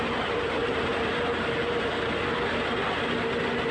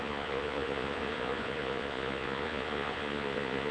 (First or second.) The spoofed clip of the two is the second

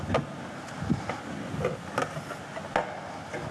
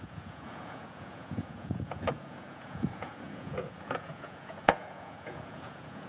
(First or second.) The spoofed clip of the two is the second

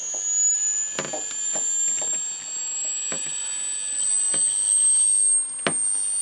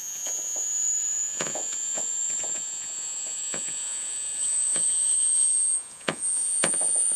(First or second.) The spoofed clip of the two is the second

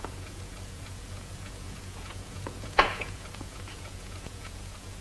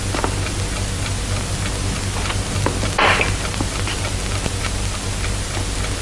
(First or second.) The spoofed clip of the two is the first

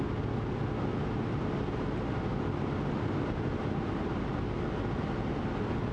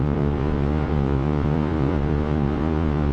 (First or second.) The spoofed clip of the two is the second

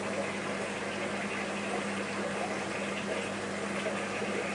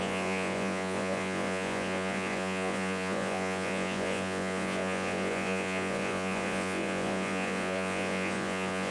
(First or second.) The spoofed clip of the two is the second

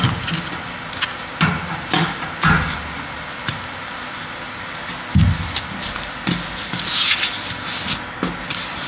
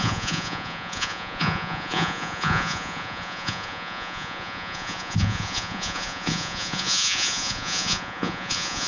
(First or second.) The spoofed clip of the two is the second